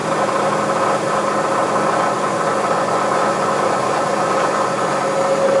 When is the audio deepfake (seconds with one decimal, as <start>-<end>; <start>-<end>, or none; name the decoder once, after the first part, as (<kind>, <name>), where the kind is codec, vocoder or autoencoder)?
1.6-5.0 (vocoder, Vocos)